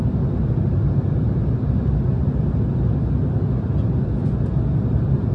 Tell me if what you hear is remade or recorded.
recorded